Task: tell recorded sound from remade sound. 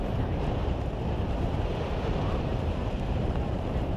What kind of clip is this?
remade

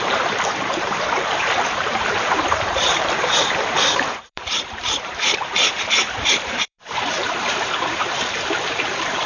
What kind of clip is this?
remade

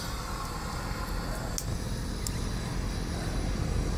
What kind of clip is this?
recorded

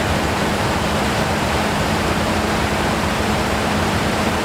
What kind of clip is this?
remade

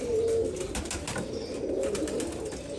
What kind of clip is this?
recorded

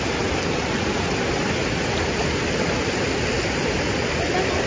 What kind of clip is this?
recorded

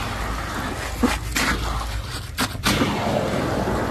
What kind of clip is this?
recorded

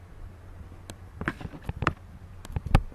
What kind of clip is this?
remade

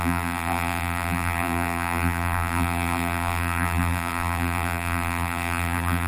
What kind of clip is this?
remade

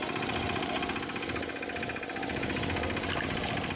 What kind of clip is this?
recorded